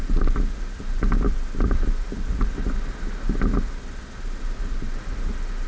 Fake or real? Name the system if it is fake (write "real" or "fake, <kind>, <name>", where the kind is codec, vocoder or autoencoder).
real